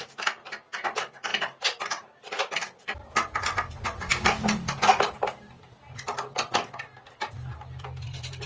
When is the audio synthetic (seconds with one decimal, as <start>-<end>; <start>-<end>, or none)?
none

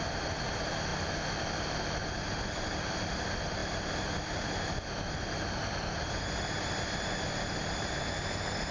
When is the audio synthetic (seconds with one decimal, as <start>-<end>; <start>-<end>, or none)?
none

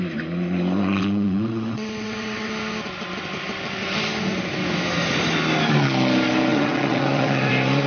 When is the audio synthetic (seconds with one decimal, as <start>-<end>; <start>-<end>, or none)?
1.0-2.5; 6.5-7.5

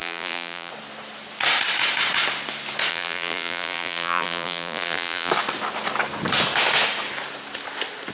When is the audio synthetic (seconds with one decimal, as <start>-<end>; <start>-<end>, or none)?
0.0-0.7; 2.9-5.3

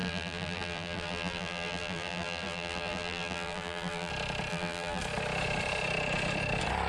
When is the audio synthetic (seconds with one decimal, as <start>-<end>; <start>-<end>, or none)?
0.0-4.1; 4.5-5.0

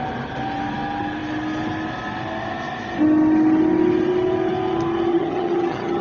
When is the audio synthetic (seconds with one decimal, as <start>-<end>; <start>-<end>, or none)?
5.1-6.0